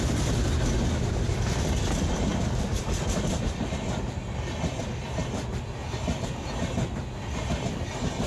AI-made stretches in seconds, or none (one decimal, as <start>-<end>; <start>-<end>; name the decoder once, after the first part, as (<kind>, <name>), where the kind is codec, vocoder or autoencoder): 0.0-8.3 (vocoder, BigVGAN v2)